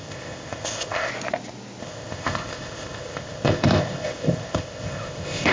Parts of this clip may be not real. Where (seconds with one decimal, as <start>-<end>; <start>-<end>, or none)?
0.0-1.1; 1.8-5.5